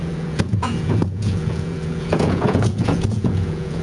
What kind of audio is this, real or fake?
fake